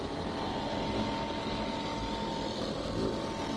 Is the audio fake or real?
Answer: real